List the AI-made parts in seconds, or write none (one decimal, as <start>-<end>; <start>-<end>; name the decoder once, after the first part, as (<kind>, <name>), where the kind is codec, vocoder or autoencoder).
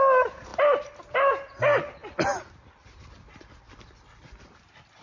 none